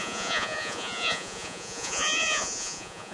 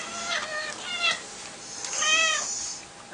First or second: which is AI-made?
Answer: first